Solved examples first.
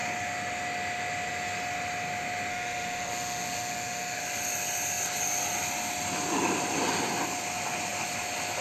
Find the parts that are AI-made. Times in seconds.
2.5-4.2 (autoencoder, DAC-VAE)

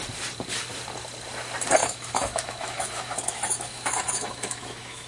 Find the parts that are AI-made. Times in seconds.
1.8-5.1 (autoencoder, DAC-VAE)

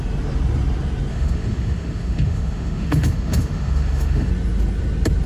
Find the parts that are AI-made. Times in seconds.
1.1-4.3 (autoencoder, DAC-VAE)